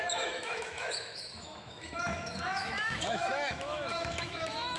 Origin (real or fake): fake